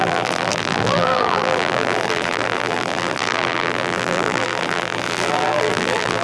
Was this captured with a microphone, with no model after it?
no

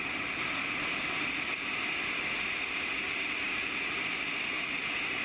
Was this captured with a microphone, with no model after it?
yes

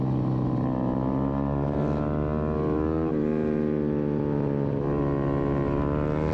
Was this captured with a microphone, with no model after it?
yes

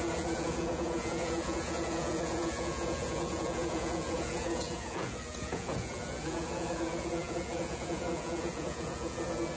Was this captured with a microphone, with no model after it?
no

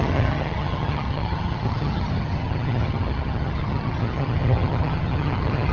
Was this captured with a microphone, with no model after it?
no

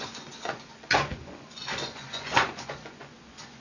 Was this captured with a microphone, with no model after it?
no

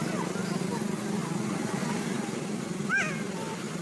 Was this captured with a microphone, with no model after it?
yes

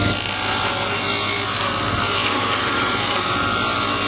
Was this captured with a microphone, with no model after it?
yes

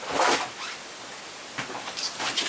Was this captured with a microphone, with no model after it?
yes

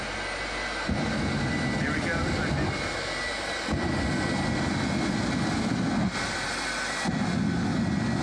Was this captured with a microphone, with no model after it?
yes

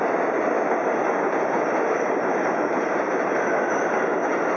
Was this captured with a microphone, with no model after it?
yes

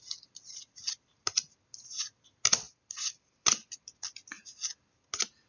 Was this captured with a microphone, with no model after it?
yes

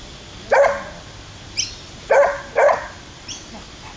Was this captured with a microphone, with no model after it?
yes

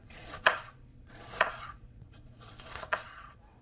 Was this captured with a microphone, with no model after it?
no